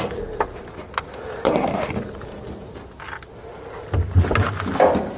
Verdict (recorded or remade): recorded